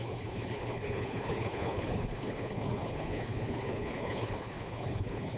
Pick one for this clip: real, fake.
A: fake